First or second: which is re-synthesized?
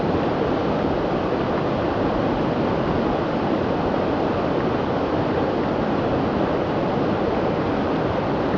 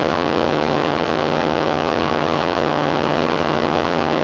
second